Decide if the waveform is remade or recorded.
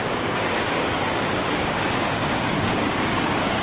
remade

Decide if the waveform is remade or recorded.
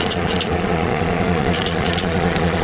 remade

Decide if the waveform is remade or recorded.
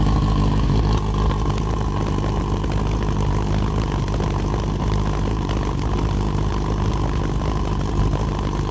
recorded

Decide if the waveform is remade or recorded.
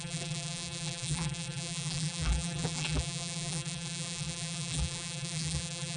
remade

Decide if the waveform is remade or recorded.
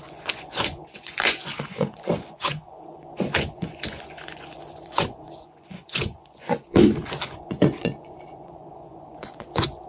remade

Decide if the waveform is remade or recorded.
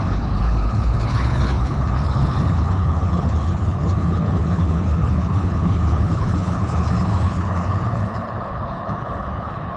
remade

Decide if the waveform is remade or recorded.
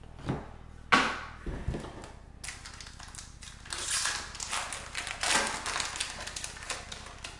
recorded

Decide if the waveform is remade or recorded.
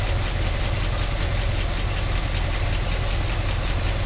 recorded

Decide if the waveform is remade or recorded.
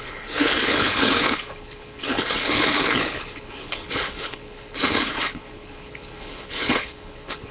remade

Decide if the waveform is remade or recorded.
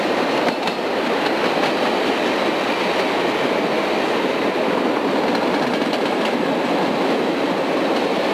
recorded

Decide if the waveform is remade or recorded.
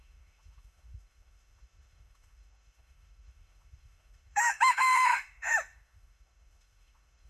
remade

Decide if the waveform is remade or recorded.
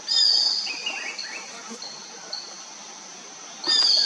recorded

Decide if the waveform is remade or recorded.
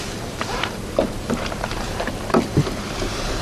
remade